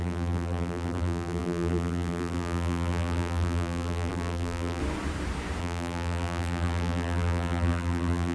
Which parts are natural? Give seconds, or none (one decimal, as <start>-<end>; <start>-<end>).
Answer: 4.8-5.6